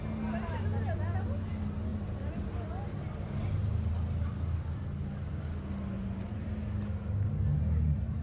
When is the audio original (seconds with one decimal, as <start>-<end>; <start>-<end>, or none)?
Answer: 0.0-8.2